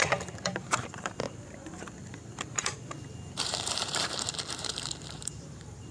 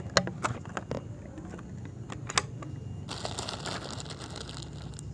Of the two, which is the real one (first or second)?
second